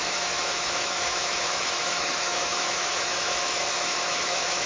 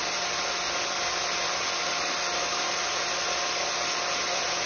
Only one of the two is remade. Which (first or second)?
first